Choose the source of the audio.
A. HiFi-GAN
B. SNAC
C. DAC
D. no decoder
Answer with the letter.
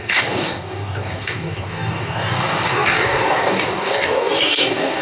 C